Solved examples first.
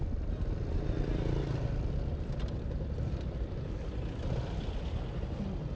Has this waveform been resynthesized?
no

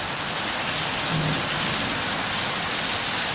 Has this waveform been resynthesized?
no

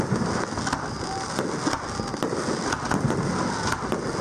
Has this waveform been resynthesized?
no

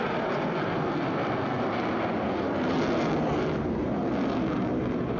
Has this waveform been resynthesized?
no